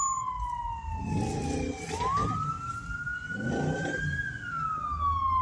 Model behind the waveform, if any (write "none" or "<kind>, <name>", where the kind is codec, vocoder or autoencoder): none